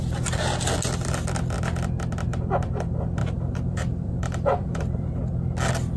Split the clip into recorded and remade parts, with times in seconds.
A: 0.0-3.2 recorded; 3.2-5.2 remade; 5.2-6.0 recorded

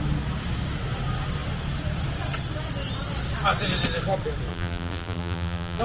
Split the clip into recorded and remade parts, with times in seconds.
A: 0.0-4.5 recorded; 4.5-5.8 remade

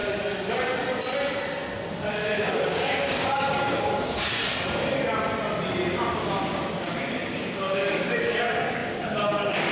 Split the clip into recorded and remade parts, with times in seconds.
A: 0.0-2.1 recorded; 2.1-4.4 remade; 4.4-6.1 recorded; 6.1-9.7 remade

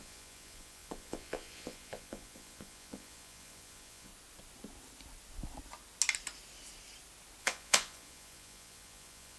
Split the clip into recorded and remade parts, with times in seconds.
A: 0.0-4.1 remade; 4.1-7.4 recorded; 7.4-9.4 remade

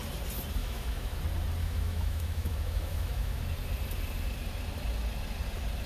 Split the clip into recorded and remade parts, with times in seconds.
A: 0.0-0.6 recorded; 0.6-1.2 remade; 1.2-1.6 recorded; 1.6-3.4 remade; 3.4-5.9 recorded